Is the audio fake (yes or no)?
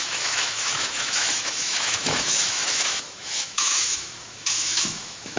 yes